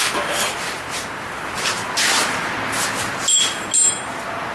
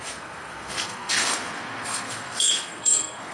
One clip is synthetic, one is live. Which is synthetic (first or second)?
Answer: second